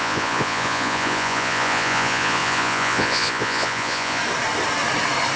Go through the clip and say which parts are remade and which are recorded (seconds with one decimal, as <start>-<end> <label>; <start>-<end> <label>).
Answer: 0.0-4.2 remade; 4.2-5.4 recorded